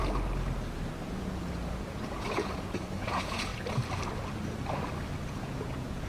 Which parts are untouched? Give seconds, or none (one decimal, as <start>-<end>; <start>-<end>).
0.0-1.1; 3.5-5.3